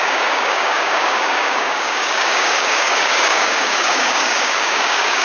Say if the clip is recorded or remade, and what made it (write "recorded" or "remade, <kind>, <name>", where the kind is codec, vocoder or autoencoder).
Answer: remade, codec, DAC